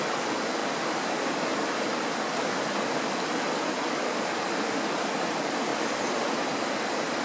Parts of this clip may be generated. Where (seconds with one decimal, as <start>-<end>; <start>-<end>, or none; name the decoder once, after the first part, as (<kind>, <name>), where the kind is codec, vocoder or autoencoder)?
0.0-0.6 (vocoder, BigVGAN v2); 4.8-5.7; 6.8-7.2